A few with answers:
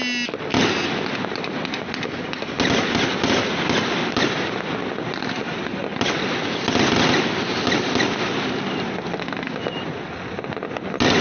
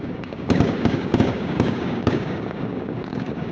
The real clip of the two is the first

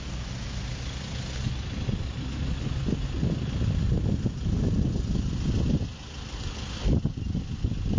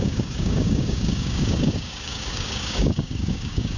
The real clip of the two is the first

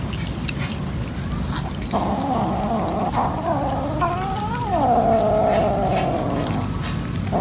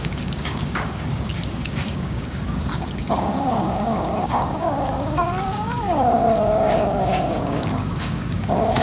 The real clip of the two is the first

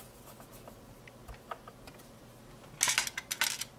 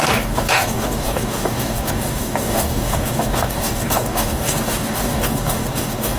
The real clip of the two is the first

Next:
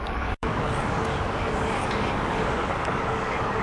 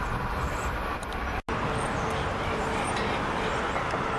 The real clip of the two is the second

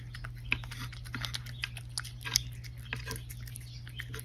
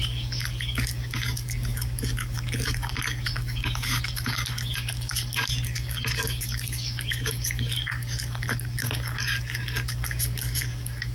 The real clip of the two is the first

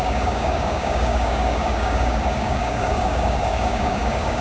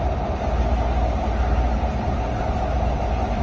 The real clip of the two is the second